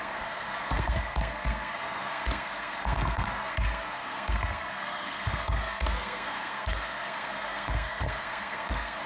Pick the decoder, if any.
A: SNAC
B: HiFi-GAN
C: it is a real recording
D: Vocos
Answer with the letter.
A